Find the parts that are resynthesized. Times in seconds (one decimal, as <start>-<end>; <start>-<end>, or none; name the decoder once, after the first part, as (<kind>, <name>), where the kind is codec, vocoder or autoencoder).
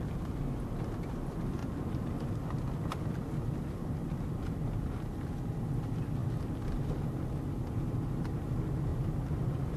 none